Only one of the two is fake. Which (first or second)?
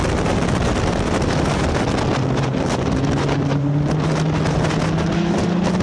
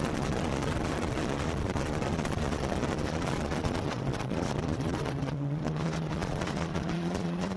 second